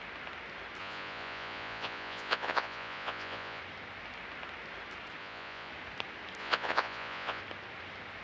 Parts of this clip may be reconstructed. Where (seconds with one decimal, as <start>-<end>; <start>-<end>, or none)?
0.8-3.6; 5.2-5.7; 6.4-7.4